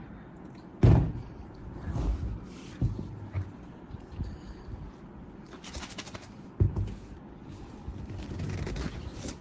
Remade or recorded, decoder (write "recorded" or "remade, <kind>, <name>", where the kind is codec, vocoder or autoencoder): recorded